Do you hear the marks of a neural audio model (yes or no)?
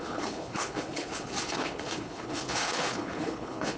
yes